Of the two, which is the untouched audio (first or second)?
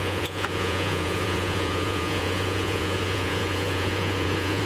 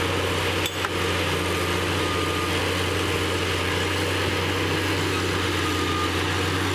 second